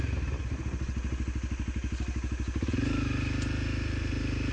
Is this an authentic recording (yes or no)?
yes